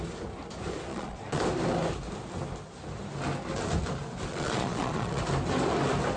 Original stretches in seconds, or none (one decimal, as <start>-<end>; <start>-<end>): 0.0-0.9; 1.4-4.3; 5.2-6.2